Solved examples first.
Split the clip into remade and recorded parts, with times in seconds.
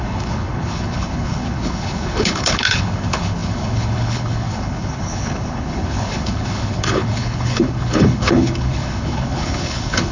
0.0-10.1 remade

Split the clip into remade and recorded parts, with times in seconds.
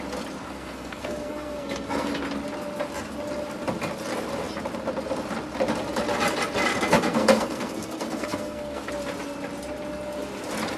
0.0-0.4 recorded; 0.4-2.1 remade; 2.1-6.7 recorded; 6.7-8.9 remade; 8.9-10.8 recorded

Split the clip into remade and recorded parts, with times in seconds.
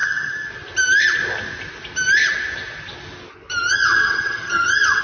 0.0-0.5 remade; 0.5-3.7 recorded; 3.7-5.0 remade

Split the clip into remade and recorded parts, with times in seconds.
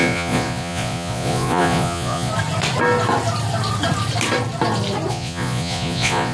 0.0-2.3 remade; 2.3-5.1 recorded; 5.1-6.3 remade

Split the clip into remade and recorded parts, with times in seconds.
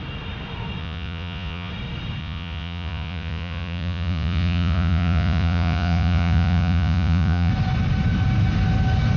0.0-0.8 recorded; 0.8-1.7 remade; 1.7-2.2 recorded; 2.2-7.5 remade; 7.5-9.2 recorded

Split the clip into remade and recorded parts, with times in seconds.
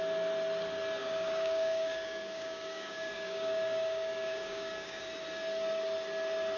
0.0-1.0 recorded; 1.0-5.0 remade; 5.0-6.6 recorded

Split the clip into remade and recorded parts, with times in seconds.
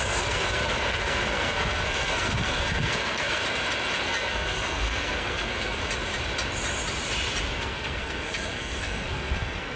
0.0-3.4 remade; 3.4-4.0 recorded; 4.0-5.8 remade; 5.8-7.6 recorded; 7.6-9.8 remade